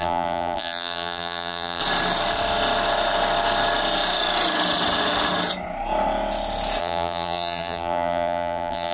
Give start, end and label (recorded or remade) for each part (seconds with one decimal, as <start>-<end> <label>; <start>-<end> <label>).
0.0-1.8 remade; 1.8-6.8 recorded; 6.8-8.9 remade